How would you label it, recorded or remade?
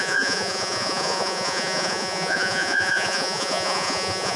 remade